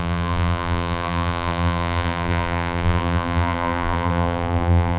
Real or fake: fake